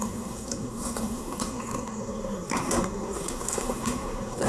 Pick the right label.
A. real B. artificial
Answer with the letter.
B